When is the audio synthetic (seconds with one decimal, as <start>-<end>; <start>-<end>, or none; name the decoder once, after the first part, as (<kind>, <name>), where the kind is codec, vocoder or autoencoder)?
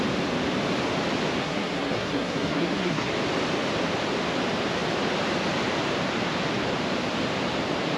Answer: 1.4-3.1 (codec, SNAC)